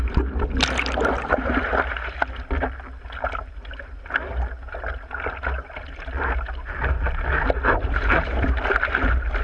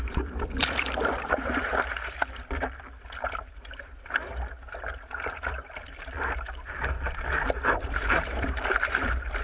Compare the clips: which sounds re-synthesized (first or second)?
second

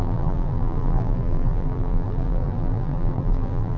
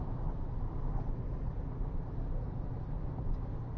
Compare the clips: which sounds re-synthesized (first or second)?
first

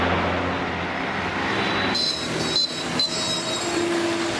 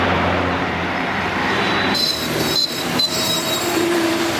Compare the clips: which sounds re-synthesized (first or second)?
second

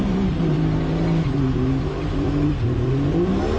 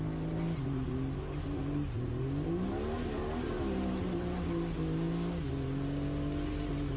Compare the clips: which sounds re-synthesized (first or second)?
first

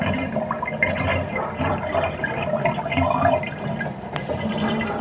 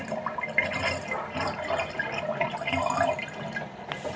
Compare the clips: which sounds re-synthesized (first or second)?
first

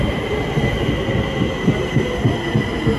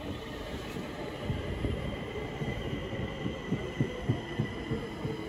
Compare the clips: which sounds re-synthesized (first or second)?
second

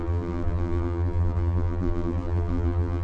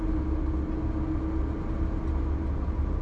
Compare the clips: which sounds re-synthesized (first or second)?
first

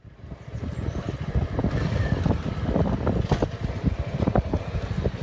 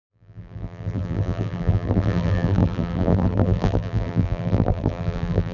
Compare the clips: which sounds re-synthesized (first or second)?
second